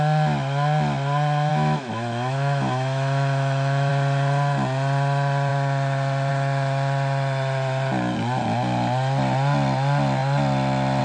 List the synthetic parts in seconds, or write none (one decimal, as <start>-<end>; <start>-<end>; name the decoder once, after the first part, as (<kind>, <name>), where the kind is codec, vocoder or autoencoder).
1.5-3.9 (autoencoder, DAC-VAE)